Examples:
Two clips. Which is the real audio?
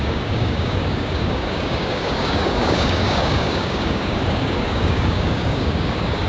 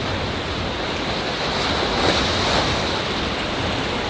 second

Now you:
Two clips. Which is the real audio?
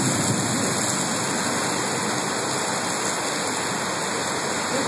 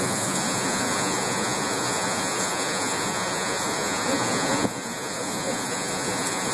first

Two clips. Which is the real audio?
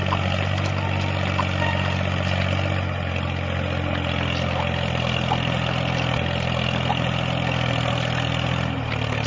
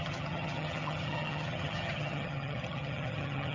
first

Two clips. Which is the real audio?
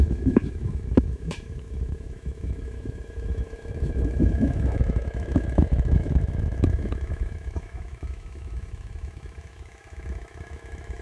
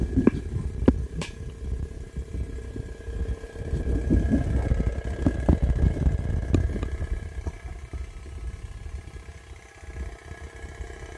second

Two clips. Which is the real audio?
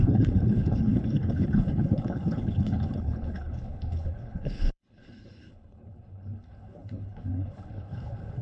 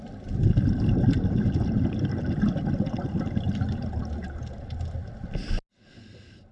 second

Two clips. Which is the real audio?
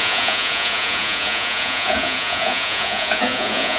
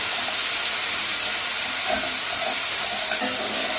second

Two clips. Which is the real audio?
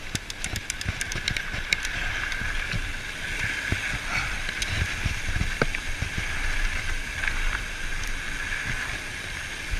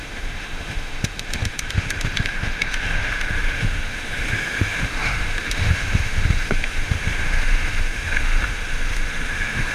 first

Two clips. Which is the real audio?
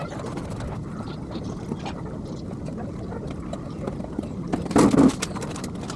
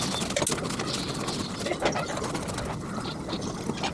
second